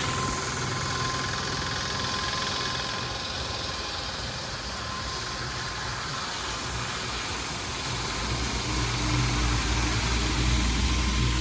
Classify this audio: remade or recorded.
recorded